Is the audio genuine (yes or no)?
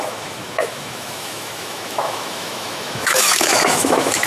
no